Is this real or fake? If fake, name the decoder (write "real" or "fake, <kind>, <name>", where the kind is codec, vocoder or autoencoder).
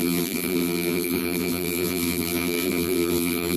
fake, vocoder, BigVGAN v2